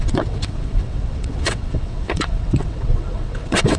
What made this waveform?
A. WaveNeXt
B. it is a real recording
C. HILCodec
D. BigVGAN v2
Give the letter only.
A